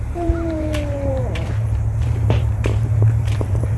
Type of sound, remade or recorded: remade